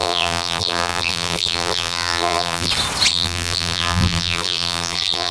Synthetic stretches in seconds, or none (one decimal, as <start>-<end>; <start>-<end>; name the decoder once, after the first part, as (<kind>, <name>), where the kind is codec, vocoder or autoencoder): 0.0-2.7 (vocoder, BigVGAN v2); 3.1-5.3

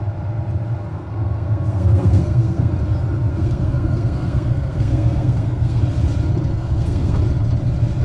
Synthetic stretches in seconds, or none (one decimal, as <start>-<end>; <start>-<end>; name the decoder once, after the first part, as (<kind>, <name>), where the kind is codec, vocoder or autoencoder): 0.9-2.7 (codec, SNAC); 3.3-5.8; 6.5-7.2